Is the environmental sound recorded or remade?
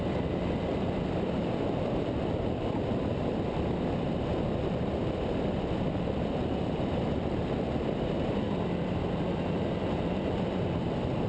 remade